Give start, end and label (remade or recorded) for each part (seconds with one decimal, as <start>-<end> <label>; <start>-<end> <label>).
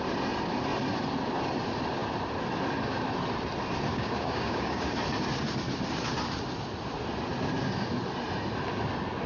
0.0-3.9 recorded; 3.9-4.9 remade; 4.9-9.3 recorded